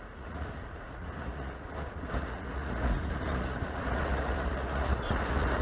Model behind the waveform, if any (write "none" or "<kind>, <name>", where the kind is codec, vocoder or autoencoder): vocoder, Vocos